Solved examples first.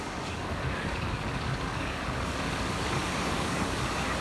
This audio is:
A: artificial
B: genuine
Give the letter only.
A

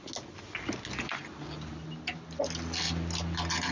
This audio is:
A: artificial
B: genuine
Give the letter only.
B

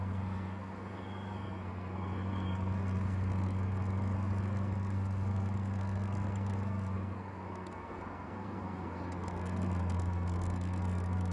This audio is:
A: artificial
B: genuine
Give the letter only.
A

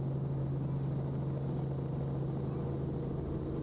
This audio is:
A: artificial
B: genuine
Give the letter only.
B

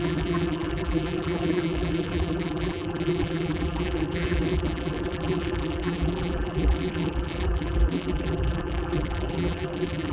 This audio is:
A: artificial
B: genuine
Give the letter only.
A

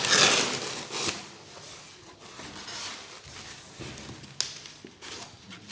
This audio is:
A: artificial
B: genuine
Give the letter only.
B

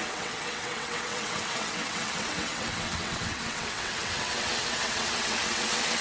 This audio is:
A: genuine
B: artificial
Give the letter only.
B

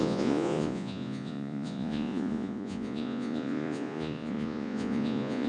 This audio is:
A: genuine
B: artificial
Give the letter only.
B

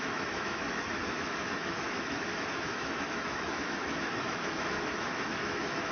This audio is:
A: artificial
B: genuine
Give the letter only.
A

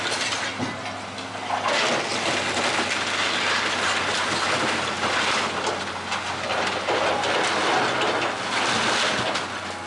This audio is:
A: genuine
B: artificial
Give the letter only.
A